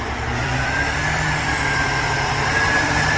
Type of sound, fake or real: fake